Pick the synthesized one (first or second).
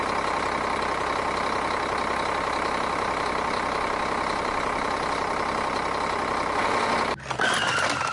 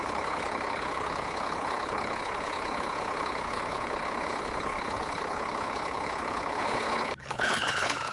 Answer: second